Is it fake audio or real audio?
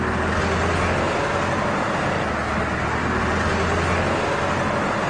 real